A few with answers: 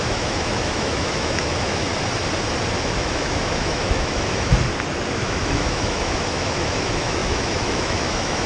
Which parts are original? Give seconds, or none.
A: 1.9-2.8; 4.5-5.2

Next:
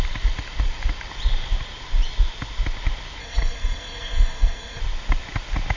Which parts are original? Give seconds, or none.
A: 0.0-3.2; 4.8-5.8

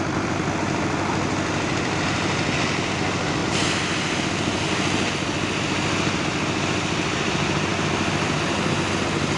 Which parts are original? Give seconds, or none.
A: 0.0-9.4

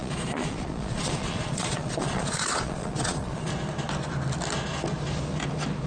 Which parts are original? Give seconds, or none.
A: 3.5-5.9

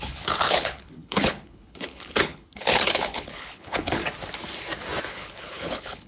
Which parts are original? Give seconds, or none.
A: 4.0-5.1

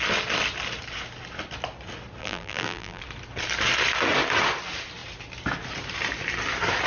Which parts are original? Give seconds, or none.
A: 0.0-2.2; 3.0-6.9

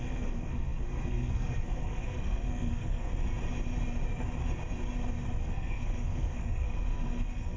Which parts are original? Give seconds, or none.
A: 3.1-5.4

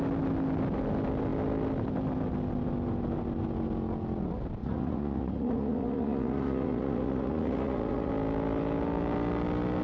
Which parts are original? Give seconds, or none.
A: 0.0-4.6; 8.1-9.8